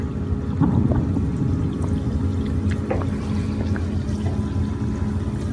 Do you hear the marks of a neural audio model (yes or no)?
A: no